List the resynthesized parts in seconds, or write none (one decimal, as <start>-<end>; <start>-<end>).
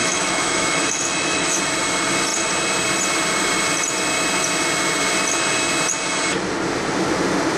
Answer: 0.0-1.6